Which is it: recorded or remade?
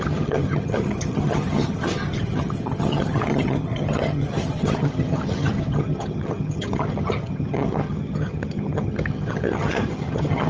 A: remade